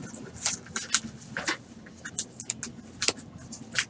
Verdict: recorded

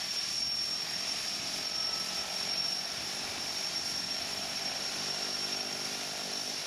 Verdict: remade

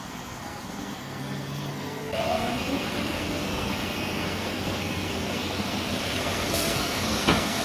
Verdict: remade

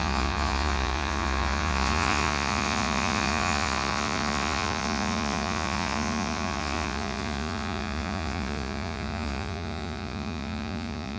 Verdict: remade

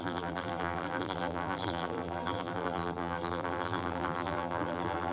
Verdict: remade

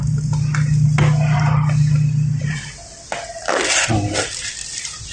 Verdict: recorded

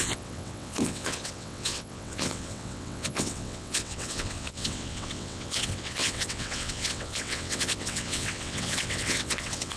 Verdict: remade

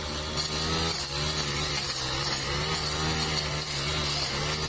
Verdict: recorded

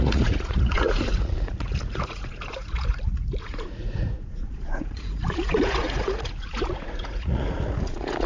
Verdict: remade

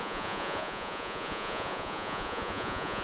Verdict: remade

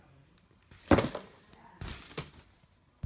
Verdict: recorded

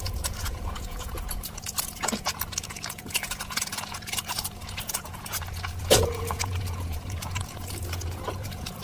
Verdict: remade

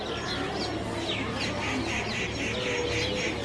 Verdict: recorded